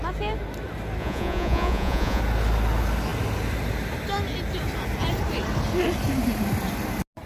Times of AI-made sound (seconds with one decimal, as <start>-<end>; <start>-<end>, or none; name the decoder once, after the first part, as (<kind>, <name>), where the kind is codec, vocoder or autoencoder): 1.0-2.2 (vocoder, Vocos)